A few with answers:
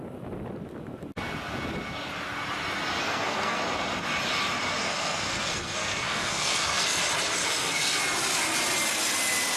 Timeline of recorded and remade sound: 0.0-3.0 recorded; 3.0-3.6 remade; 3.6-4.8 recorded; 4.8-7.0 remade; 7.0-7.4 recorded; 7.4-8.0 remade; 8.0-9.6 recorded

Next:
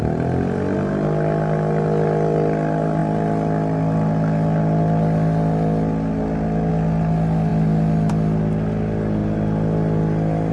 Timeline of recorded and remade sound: 0.0-10.5 recorded

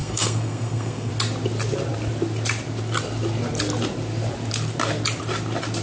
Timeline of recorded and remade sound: 0.0-1.1 remade; 1.1-5.8 recorded

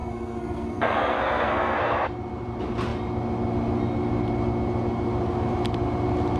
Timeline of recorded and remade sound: 0.0-1.8 remade; 1.8-6.4 recorded

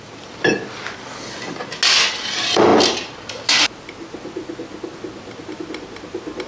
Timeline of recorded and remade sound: 0.0-6.5 recorded

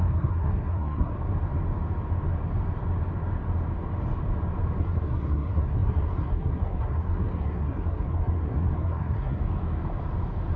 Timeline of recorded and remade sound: 0.0-1.1 remade; 1.1-4.8 recorded; 4.8-9.4 remade; 9.4-10.6 recorded

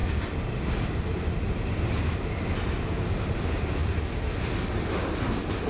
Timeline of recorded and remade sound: 0.0-5.7 recorded